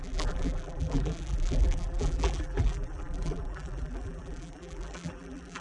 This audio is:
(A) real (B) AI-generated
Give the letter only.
B